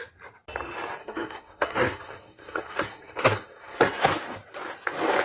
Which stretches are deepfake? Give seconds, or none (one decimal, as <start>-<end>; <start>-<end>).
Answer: 1.0-4.1